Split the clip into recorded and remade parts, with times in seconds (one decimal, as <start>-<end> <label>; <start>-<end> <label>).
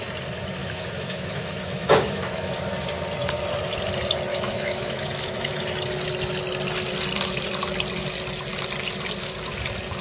0.0-0.6 recorded; 0.6-2.6 remade; 2.6-4.3 recorded; 4.3-5.6 remade; 5.6-10.0 recorded